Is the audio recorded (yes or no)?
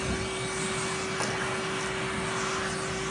yes